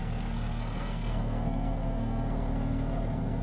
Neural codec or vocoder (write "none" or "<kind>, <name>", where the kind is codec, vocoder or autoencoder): codec, SNAC